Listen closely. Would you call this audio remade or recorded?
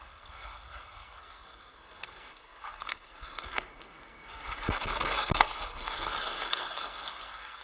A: remade